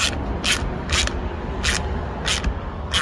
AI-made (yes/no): no